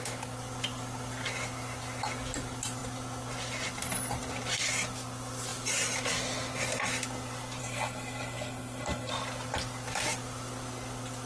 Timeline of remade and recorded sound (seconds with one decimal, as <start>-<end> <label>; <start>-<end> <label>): 0.0-7.6 recorded; 7.6-9.1 remade; 9.1-11.3 recorded